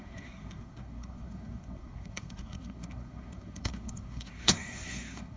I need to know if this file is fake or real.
fake